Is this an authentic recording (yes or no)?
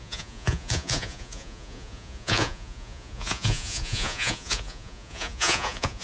no